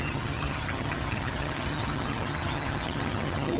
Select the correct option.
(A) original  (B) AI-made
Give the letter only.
B